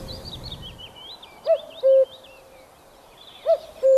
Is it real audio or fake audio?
fake